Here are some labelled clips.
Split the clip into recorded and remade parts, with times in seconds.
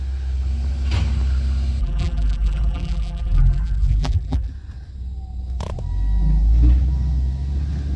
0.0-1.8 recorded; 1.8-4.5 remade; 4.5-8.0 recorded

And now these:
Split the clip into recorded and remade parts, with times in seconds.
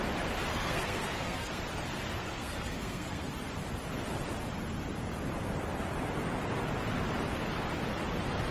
0.0-0.5 recorded; 0.5-1.6 remade; 1.6-2.2 recorded; 2.2-3.3 remade; 3.3-8.5 recorded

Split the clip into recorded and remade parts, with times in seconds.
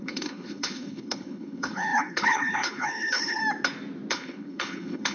0.0-3.4 remade; 3.4-4.1 recorded; 4.1-5.1 remade